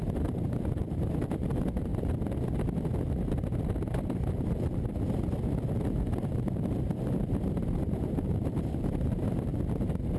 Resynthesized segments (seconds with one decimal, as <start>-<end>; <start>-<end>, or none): 0.0-1.9; 5.7-9.5